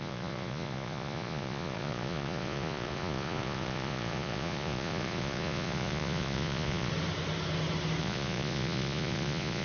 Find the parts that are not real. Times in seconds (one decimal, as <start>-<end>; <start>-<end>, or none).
0.0-6.9; 8.0-9.6